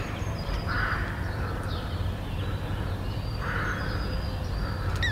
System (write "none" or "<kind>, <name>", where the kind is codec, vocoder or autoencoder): none